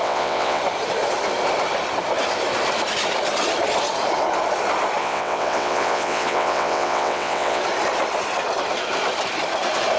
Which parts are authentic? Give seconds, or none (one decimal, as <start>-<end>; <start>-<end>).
0.6-5.0; 7.6-10.0